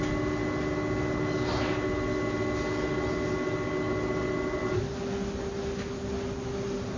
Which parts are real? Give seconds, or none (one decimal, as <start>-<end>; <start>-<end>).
0.0-7.0